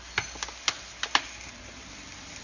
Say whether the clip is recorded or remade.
recorded